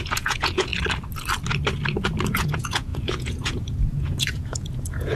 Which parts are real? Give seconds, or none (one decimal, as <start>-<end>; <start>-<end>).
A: 0.7-2.3